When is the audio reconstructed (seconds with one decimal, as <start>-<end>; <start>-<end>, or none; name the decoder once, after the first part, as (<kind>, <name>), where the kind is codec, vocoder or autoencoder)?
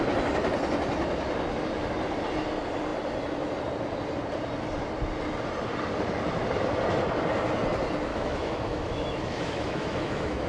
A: 8.1-10.5 (autoencoder, DAC-VAE)